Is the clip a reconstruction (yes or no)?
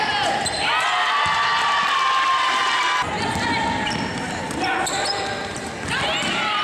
no